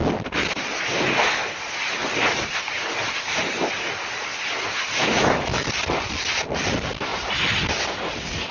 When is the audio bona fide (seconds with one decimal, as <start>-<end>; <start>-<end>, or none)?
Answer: 0.0-5.0; 5.7-8.5